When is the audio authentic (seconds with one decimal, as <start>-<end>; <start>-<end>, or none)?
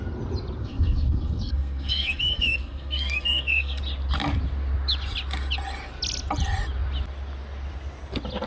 0.0-0.6; 3.8-8.5